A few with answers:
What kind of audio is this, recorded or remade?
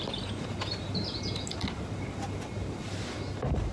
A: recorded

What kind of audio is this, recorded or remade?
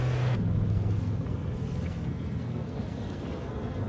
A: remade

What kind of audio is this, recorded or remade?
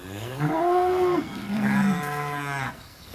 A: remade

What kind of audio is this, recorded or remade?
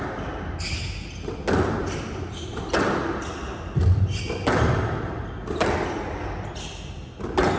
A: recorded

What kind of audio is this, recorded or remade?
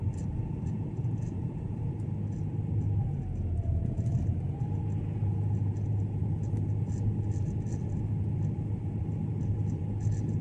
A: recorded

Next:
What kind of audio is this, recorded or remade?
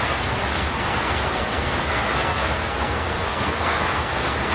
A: remade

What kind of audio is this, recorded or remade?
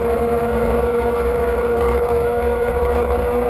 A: remade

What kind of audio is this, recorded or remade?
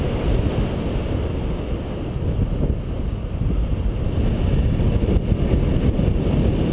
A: recorded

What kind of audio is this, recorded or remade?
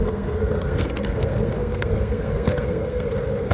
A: remade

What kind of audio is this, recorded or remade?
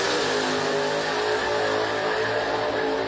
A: recorded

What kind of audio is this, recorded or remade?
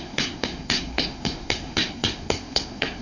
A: remade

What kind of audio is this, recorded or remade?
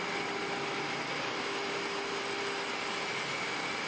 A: recorded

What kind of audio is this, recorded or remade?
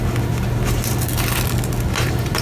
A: recorded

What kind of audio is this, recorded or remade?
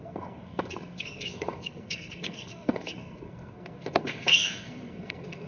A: remade